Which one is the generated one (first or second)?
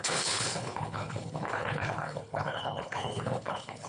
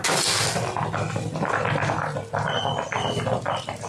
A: first